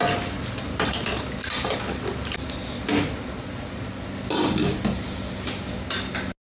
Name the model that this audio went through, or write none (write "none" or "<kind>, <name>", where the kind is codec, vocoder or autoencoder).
none